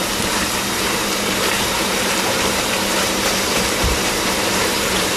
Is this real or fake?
fake